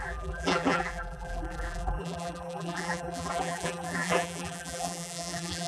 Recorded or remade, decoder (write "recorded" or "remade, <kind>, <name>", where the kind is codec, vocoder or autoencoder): remade, vocoder, BigVGAN v2